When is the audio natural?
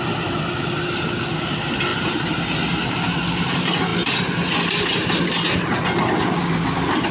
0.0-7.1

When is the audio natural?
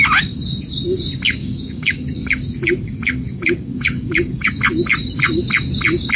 0.0-1.4; 4.6-6.2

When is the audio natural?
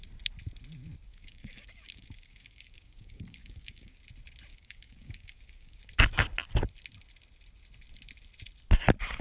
0.0-1.1; 4.0-4.5; 5.8-9.2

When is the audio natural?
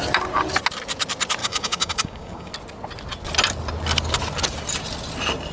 0.0-1.4; 2.5-5.5